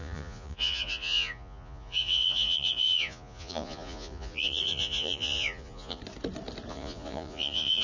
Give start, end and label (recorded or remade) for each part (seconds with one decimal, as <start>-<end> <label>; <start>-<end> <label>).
0.0-6.0 remade; 6.0-6.7 recorded; 6.7-7.8 remade

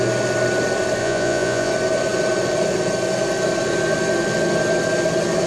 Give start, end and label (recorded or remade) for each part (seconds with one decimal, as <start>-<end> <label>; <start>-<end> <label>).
0.0-1.0 recorded; 1.0-1.7 remade; 1.7-5.5 recorded

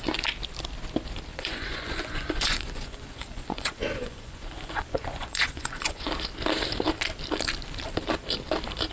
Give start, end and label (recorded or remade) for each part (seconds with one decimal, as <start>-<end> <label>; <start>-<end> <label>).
0.0-1.3 recorded; 1.3-6.1 remade; 6.1-8.9 recorded